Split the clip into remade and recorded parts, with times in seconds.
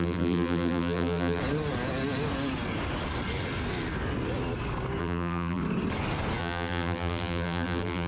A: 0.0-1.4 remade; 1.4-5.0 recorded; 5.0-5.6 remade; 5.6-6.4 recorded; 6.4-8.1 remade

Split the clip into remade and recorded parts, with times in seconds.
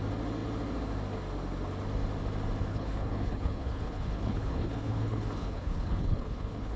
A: 0.0-2.7 recorded; 2.7-6.8 remade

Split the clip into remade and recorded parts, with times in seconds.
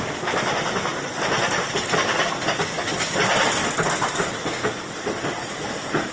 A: 0.0-0.9 remade; 0.9-1.5 recorded; 1.5-3.6 remade; 3.6-4.7 recorded; 4.7-6.1 remade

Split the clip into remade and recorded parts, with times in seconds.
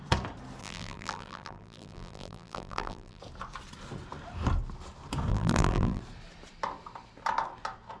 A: 0.0-0.6 recorded; 0.6-3.2 remade; 3.2-5.3 recorded; 5.3-6.0 remade; 6.0-8.0 recorded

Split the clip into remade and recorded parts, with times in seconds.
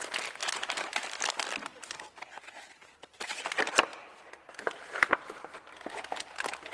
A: 0.0-0.4 recorded; 0.4-1.2 remade; 1.2-3.9 recorded; 3.9-4.5 remade; 4.5-6.7 recorded